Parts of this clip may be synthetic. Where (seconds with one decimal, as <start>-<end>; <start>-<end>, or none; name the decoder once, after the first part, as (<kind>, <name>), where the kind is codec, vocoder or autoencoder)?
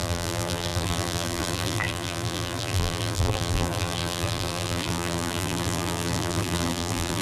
0.0-7.2 (vocoder, BigVGAN v2)